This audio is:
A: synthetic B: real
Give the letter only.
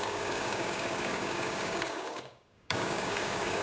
A